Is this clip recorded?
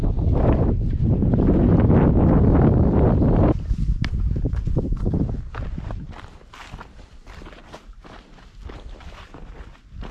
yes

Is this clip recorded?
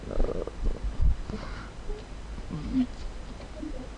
yes